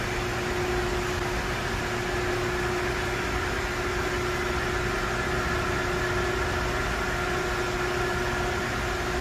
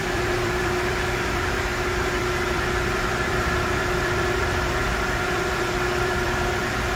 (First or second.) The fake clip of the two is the second